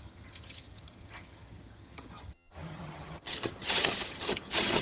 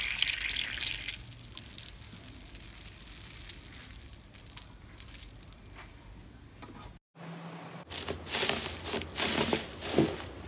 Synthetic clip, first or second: first